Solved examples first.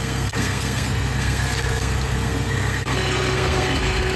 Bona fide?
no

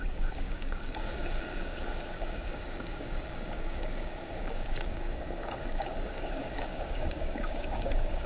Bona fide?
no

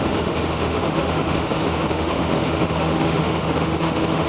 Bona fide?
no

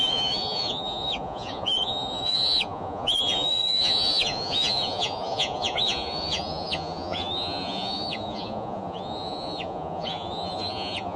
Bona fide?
no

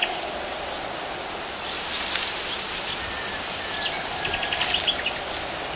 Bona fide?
yes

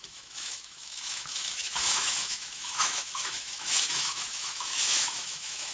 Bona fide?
no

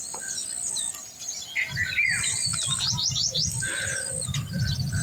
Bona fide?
no